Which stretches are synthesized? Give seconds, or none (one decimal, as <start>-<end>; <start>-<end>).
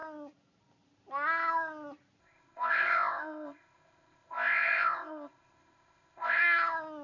2.2-6.4